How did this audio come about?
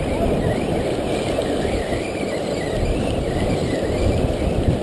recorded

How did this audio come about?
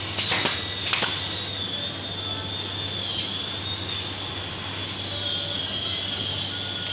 recorded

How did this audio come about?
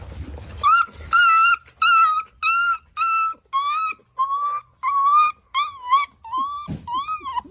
recorded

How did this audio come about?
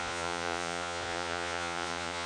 remade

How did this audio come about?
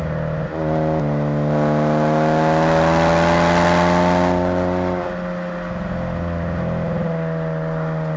recorded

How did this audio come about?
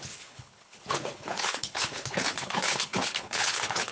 remade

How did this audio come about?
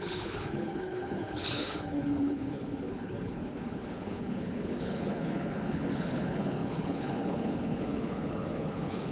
remade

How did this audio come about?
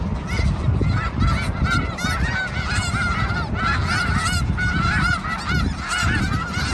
recorded